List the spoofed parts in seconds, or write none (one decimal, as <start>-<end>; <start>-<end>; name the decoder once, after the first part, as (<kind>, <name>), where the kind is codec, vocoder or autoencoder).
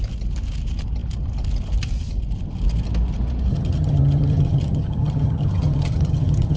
3.5-6.6 (vocoder, HiFi-GAN)